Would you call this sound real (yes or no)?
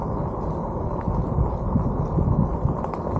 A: yes